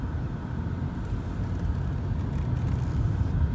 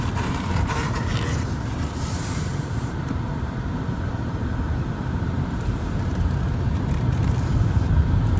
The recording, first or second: first